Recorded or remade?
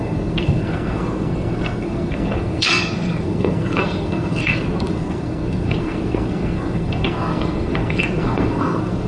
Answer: remade